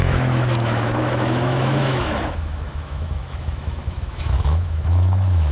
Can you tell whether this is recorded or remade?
remade